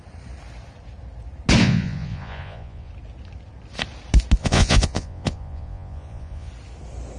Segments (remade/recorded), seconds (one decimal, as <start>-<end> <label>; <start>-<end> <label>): 0.0-1.6 recorded; 1.6-2.9 remade; 2.9-4.4 recorded; 4.4-6.5 remade; 6.5-7.2 recorded